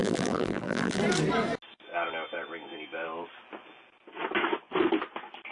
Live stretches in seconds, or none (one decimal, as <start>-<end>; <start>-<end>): 1.0-5.5